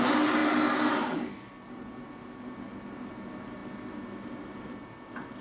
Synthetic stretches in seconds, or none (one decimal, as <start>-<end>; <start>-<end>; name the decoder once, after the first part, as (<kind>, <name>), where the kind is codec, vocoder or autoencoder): none